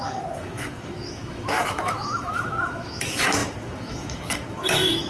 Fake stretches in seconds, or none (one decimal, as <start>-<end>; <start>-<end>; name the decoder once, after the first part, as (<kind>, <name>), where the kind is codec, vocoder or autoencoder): 0.0-5.1 (autoencoder, DAC-VAE)